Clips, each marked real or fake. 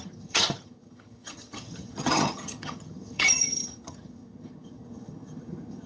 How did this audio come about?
fake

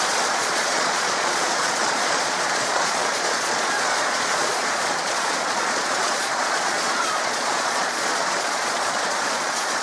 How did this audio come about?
fake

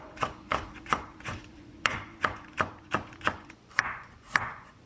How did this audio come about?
fake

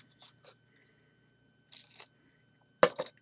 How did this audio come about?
real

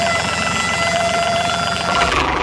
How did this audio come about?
fake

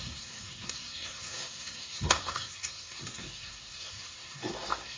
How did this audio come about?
fake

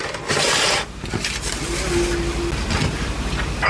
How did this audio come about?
real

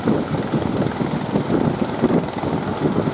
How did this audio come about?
real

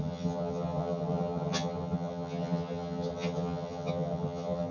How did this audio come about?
fake